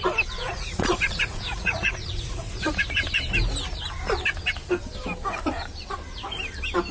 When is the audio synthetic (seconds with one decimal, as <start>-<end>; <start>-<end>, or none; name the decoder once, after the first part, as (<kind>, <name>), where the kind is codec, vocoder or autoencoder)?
0.4-2.7 (vocoder, Vocos)